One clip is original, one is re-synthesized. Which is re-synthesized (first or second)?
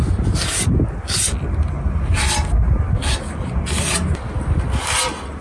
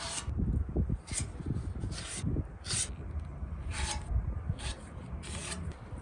second